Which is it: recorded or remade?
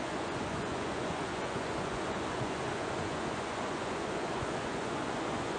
remade